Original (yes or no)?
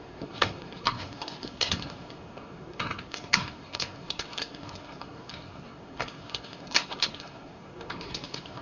no